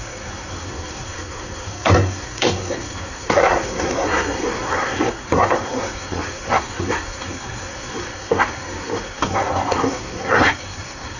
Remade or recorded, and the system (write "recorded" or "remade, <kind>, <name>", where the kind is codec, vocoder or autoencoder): remade, codec, SNAC